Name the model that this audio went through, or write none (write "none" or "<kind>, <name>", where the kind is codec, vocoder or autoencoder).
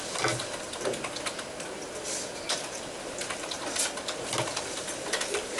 none